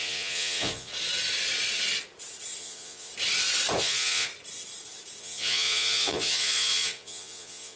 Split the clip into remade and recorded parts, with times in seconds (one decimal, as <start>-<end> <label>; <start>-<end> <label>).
0.0-0.9 remade; 0.9-2.6 recorded; 2.6-3.1 remade; 3.1-3.8 recorded; 3.8-4.3 remade; 4.3-5.2 recorded; 5.2-7.8 remade